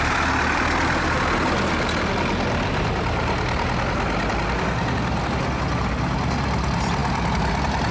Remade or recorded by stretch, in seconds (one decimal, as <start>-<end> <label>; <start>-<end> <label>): 0.0-7.9 recorded